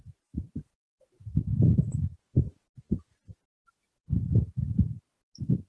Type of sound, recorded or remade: recorded